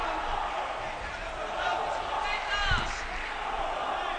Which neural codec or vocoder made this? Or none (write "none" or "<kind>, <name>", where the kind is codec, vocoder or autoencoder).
none